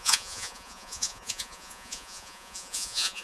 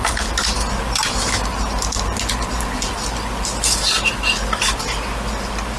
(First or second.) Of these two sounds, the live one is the second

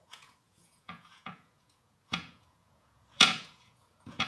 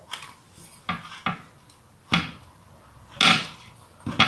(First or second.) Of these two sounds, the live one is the second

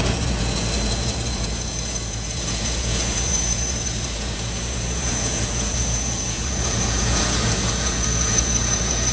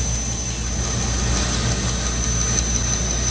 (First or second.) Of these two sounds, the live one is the second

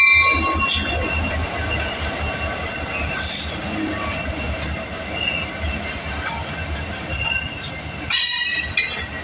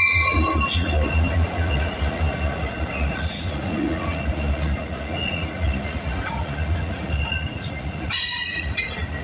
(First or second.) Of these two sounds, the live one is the first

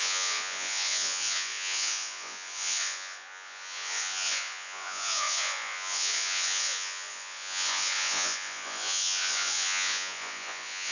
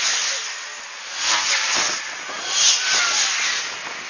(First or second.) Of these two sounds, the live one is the second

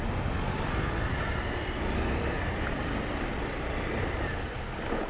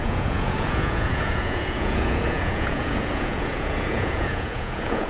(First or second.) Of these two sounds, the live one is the first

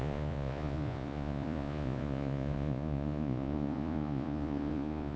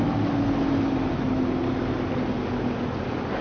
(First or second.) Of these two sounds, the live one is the second